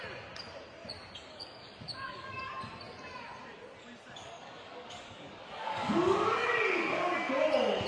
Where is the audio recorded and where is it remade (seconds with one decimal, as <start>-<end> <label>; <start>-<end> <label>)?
0.0-1.3 recorded; 1.3-2.5 remade; 2.5-4.2 recorded; 4.2-7.3 remade; 7.3-7.9 recorded